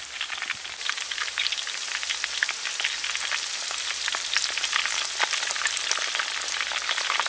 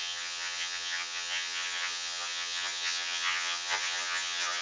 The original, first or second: first